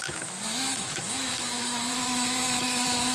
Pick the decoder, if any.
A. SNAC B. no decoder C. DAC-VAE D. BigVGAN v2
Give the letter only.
C